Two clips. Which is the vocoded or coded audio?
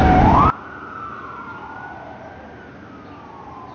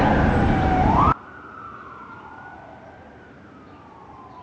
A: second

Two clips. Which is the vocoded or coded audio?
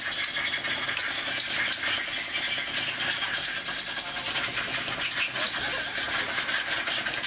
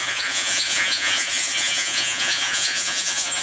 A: second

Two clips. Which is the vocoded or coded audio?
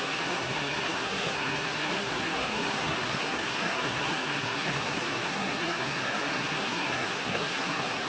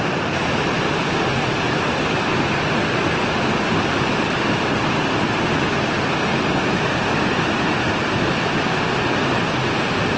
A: first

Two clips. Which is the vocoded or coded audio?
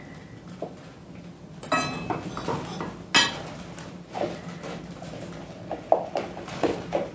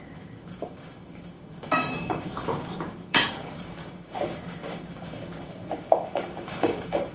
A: second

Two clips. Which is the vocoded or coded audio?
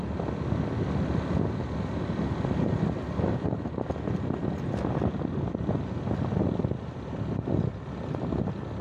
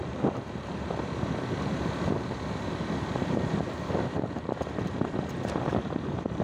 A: second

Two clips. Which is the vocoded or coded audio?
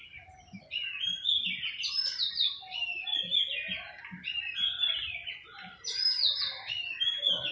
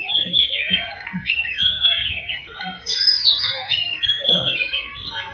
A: second